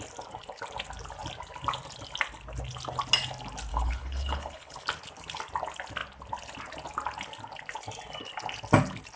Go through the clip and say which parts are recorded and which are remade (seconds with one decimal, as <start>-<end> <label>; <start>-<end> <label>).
0.0-3.7 recorded; 3.7-4.8 remade; 4.8-9.2 recorded